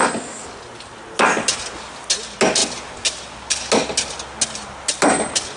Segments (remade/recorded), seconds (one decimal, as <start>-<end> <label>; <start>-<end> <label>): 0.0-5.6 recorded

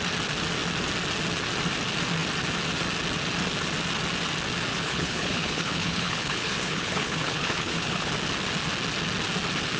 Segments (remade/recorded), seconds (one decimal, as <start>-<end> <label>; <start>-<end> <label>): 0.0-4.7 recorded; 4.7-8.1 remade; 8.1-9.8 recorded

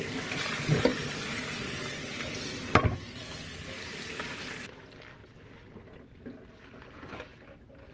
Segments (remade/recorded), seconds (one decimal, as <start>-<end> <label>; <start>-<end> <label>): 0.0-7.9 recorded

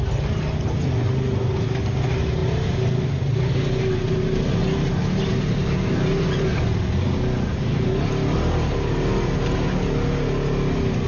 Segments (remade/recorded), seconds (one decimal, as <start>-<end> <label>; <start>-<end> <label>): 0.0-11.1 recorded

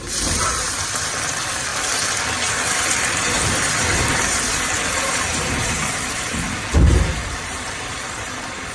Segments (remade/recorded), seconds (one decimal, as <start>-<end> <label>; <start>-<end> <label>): 0.0-1.7 remade; 1.7-2.5 recorded; 2.5-8.7 remade